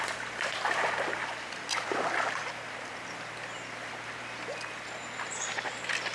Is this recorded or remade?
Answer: recorded